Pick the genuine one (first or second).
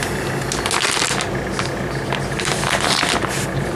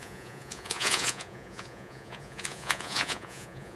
first